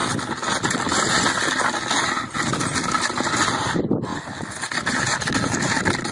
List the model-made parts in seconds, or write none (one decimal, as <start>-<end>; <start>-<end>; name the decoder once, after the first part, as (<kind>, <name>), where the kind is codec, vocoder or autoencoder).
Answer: none